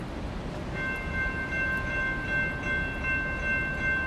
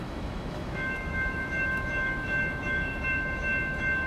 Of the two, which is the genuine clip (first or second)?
first